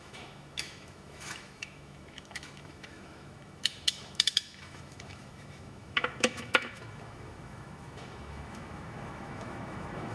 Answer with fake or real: fake